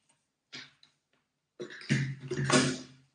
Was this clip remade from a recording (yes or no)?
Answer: no